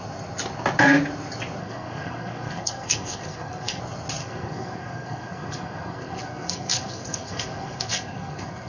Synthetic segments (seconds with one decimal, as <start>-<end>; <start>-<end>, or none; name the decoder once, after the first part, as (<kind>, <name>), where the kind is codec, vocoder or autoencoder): 1.6-3.8 (codec, SNAC); 4.2-8.7